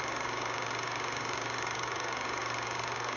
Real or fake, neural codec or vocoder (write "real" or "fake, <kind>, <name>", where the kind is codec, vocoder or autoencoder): fake, codec, DAC